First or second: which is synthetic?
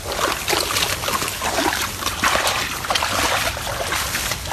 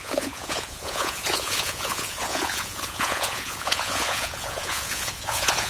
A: second